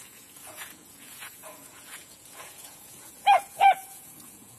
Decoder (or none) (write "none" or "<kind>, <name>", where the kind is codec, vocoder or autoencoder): vocoder, Vocos